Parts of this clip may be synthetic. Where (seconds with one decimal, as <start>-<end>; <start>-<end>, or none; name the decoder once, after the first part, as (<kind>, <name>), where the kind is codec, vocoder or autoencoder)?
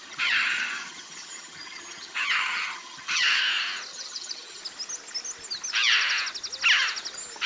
0.0-3.4 (vocoder, HiFi-GAN); 3.9-4.6